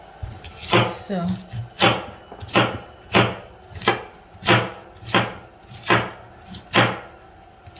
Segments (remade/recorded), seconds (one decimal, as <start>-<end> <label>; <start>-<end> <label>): 0.0-7.8 recorded

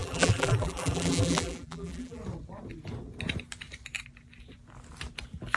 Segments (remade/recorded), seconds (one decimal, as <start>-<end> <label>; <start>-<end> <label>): 0.0-2.2 remade; 2.2-5.6 recorded

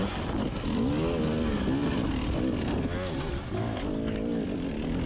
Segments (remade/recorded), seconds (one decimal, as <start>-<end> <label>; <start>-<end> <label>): 0.0-1.8 recorded; 1.8-2.4 remade; 2.4-5.1 recorded

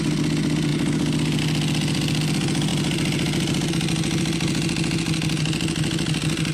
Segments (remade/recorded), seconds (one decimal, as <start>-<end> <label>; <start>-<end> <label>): 0.0-6.5 recorded

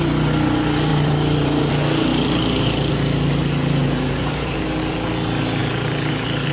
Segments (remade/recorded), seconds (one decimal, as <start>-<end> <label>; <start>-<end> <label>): 0.0-0.9 recorded; 0.9-1.7 remade; 1.7-2.1 recorded; 2.1-2.9 remade; 2.9-3.8 recorded; 3.8-4.8 remade; 4.8-5.6 recorded; 5.6-6.5 remade

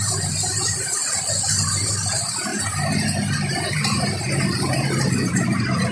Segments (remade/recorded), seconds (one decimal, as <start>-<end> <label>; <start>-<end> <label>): 0.0-1.0 remade; 1.0-1.8 recorded; 1.8-5.9 remade

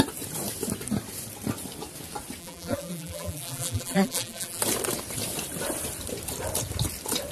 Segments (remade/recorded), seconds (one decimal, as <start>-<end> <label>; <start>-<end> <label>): 0.0-2.4 recorded; 2.4-4.6 remade; 4.6-7.3 recorded

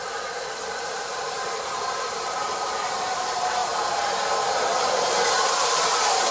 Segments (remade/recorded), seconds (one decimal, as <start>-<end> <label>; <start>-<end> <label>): 0.0-3.6 remade; 3.6-5.2 recorded; 5.2-6.3 remade